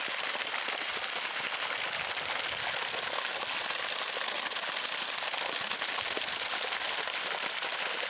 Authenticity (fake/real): real